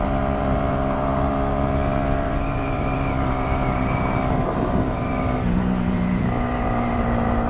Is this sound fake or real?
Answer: fake